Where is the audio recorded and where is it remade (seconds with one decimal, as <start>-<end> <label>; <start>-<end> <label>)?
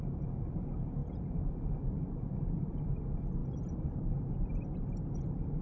0.0-5.6 recorded